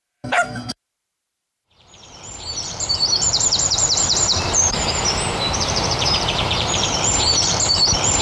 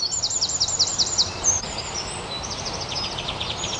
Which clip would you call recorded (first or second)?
second